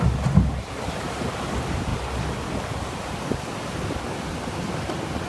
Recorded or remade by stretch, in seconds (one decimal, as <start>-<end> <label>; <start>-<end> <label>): 0.0-5.3 recorded